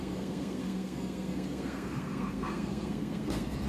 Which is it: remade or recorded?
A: remade